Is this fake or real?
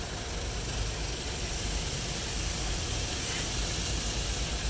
real